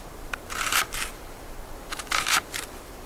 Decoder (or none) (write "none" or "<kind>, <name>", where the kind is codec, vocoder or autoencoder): vocoder, BigVGAN v2